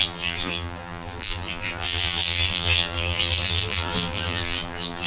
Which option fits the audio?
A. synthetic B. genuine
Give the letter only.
A